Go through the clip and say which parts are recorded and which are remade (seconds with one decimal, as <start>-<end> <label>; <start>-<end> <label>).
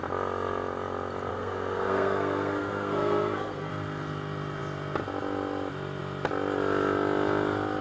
0.0-1.3 recorded; 1.3-3.7 remade; 3.7-7.8 recorded